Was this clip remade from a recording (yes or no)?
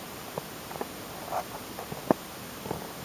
no